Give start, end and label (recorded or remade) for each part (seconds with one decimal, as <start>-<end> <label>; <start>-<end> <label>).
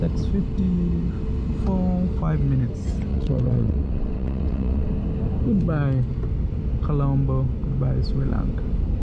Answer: 0.0-3.1 recorded; 3.1-4.9 remade; 4.9-9.0 recorded